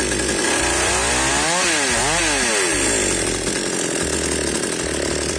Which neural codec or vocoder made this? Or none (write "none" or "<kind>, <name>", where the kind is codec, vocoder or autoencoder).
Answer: none